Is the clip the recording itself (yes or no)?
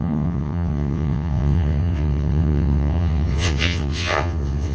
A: no